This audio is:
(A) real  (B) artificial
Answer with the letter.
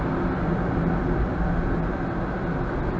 A